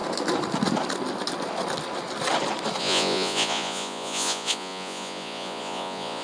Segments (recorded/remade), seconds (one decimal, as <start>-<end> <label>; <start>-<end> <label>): 0.0-2.8 recorded; 2.8-6.2 remade